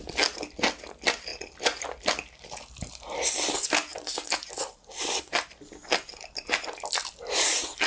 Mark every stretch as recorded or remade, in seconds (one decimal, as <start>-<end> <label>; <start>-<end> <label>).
0.0-7.9 recorded